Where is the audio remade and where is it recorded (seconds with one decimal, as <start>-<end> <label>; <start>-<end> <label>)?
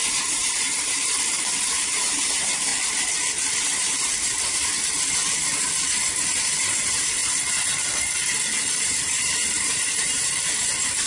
0.0-2.7 remade; 2.7-3.6 recorded; 3.6-4.7 remade; 4.7-6.4 recorded; 6.4-7.2 remade; 7.2-8.8 recorded; 8.8-11.1 remade